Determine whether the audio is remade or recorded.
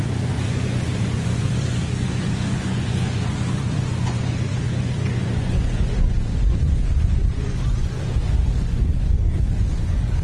remade